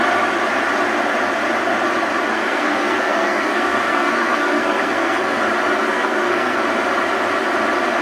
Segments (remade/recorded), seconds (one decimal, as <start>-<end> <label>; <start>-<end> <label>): 0.0-2.3 recorded; 2.3-5.4 remade; 5.4-5.9 recorded; 5.9-6.6 remade; 6.6-8.0 recorded

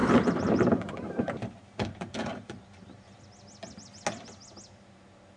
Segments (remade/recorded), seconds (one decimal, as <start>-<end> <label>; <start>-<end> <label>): 0.0-3.2 remade; 3.2-5.4 recorded

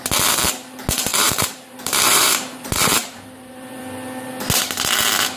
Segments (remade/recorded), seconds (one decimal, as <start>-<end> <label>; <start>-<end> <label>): 0.0-1.1 recorded; 1.1-3.8 remade; 3.8-5.4 recorded